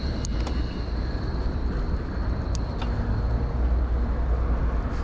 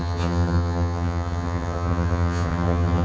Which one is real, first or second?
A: first